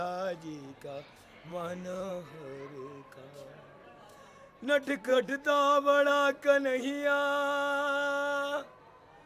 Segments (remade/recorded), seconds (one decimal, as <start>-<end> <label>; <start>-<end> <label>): 0.0-1.5 recorded; 1.5-2.1 remade; 2.1-5.1 recorded; 5.1-6.1 remade; 6.1-9.3 recorded